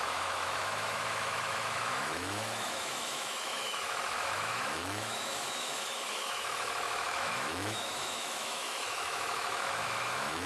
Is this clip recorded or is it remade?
remade